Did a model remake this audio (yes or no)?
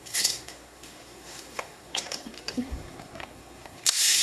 yes